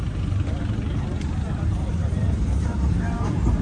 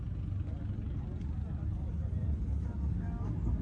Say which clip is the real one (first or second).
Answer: second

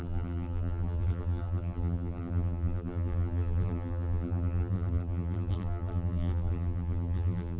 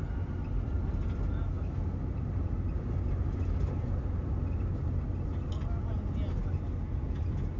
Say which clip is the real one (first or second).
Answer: second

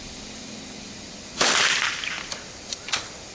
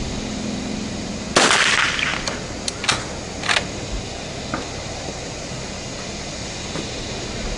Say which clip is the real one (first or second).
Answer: second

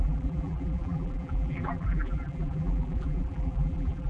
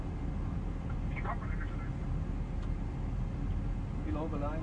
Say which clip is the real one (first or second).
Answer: second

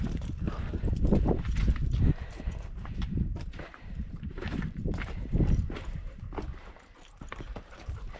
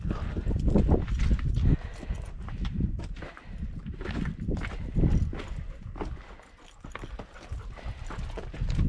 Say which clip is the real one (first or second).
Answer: second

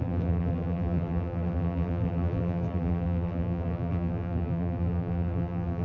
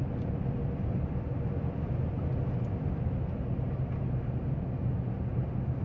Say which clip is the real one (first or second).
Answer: second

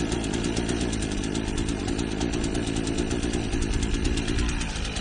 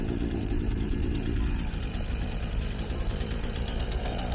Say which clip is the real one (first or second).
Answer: first